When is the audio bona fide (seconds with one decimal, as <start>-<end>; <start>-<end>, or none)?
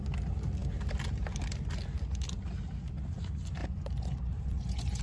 0.0-3.6